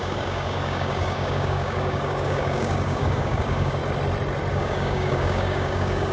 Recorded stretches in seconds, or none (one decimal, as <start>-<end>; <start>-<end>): 3.8-4.5